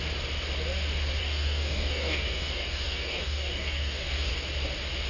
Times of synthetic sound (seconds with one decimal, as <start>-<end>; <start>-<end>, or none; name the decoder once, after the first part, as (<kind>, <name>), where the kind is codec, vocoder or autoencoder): 1.2-4.3 (codec, DAC)